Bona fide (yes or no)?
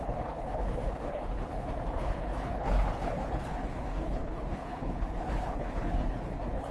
no